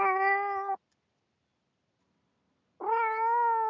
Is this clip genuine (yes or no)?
yes